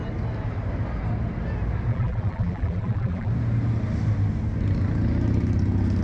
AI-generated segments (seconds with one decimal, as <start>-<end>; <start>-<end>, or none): 1.9-3.3